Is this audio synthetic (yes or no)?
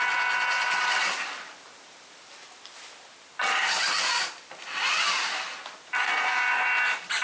no